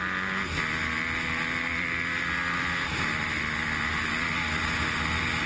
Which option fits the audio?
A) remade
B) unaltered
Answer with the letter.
B